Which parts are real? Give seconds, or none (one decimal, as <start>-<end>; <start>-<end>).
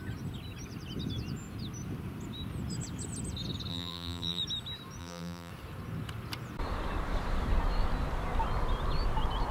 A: 0.0-3.7; 4.4-5.0; 5.5-9.5